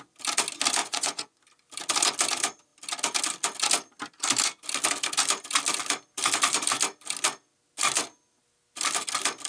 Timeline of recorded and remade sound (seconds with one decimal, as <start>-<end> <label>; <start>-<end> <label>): 0.0-0.8 recorded; 0.8-1.4 remade; 1.4-9.5 recorded